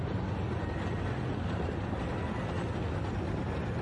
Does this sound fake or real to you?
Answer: real